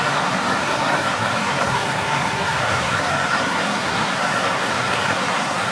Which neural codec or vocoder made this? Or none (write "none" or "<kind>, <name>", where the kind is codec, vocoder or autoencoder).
codec, SNAC